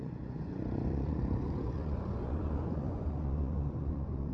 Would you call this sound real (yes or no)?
no